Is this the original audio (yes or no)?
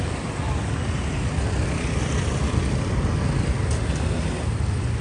yes